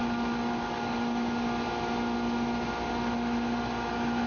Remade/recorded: recorded